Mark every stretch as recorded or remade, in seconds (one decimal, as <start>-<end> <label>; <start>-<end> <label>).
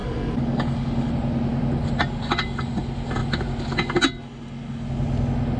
0.0-1.1 remade; 1.1-5.6 recorded